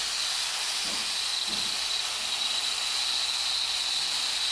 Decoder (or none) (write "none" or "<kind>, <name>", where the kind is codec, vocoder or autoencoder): none